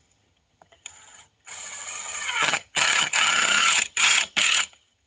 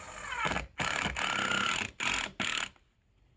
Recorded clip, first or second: second